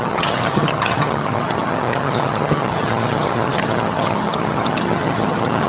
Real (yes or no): no